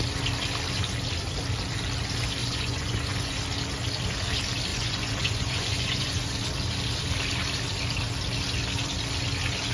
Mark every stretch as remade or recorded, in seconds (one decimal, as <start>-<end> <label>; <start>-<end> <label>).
0.0-2.4 recorded; 2.4-3.4 remade; 3.4-4.7 recorded; 4.7-6.4 remade; 6.4-9.7 recorded